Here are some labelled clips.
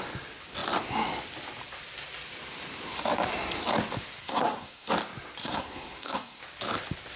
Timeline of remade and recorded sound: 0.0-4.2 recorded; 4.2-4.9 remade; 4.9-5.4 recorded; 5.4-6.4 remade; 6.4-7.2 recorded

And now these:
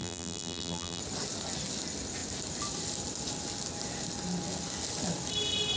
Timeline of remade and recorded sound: 0.0-1.0 remade; 1.0-5.8 recorded

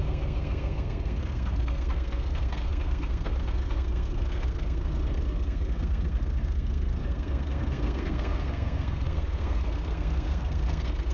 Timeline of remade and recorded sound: 0.0-11.1 remade

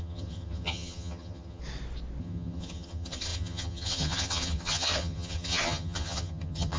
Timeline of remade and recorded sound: 0.0-1.6 remade; 1.6-2.2 recorded; 2.2-6.8 remade

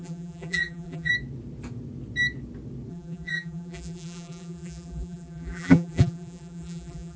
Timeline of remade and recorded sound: 0.0-1.1 remade; 1.1-2.9 recorded; 2.9-7.2 remade